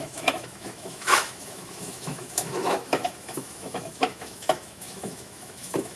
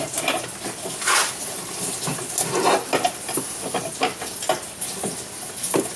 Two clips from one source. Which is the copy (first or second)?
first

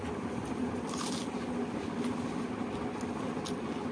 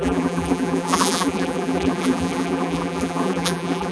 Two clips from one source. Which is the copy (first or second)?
second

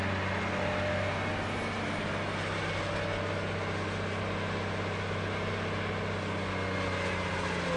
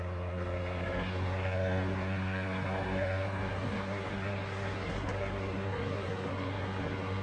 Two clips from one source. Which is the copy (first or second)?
second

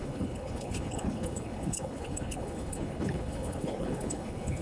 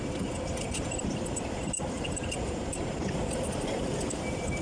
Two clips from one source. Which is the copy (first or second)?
first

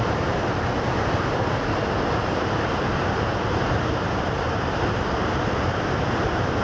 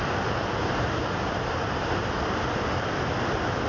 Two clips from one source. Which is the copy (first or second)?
first